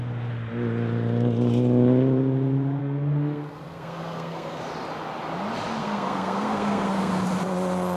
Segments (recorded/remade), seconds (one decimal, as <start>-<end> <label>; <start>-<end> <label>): 0.0-2.8 recorded; 2.8-4.6 remade; 4.6-5.8 recorded; 5.8-7.1 remade; 7.1-8.0 recorded